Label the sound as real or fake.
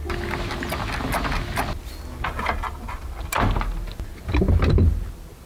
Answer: real